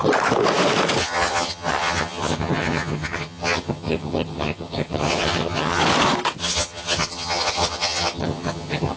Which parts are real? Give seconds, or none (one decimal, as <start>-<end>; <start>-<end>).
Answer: 0.0-1.0; 5.8-6.4